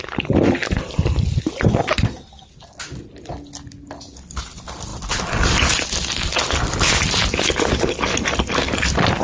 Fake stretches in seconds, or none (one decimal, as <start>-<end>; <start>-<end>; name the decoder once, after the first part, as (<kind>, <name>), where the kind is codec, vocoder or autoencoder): none